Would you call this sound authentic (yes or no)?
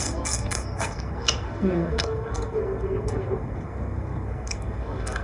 no